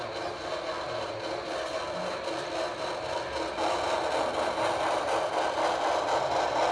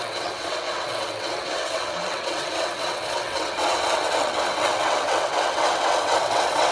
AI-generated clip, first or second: second